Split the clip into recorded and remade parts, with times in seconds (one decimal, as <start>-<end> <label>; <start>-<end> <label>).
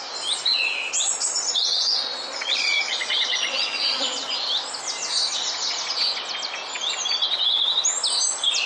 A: 0.0-0.5 recorded; 0.5-4.2 remade; 4.2-8.7 recorded